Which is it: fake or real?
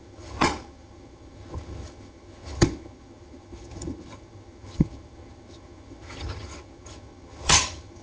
fake